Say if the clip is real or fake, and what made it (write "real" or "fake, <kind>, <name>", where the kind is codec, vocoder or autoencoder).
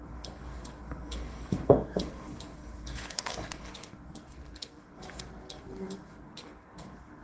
fake, codec, SNAC